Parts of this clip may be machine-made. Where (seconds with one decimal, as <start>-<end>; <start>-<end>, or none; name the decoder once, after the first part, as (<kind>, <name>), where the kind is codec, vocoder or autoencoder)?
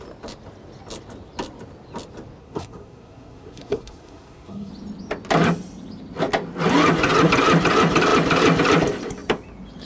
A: 2.4-4.7 (codec, SNAC)